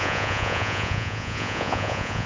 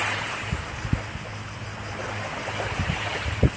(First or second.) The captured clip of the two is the second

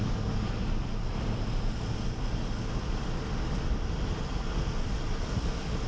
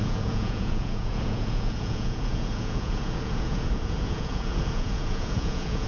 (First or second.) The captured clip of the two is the first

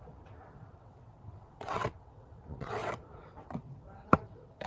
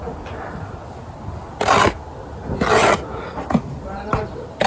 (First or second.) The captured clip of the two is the second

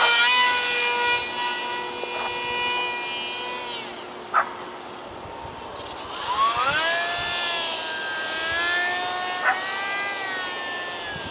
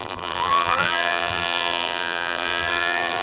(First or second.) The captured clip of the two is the first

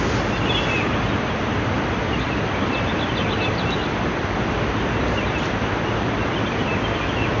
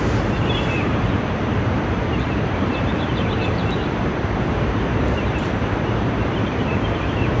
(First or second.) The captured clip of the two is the first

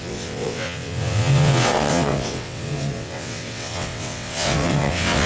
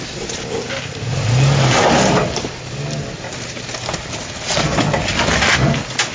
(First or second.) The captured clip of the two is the second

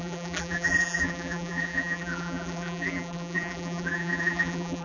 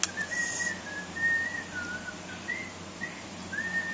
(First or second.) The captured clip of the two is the second